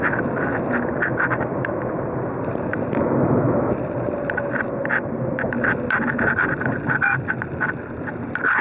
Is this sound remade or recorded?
remade